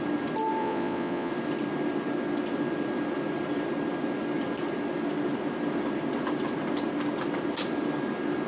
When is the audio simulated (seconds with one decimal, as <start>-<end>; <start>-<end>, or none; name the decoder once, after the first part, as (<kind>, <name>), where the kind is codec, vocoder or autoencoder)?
0.6-1.3 (vocoder, Vocos)